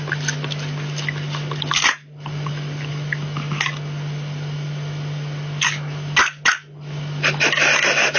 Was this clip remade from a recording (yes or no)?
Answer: no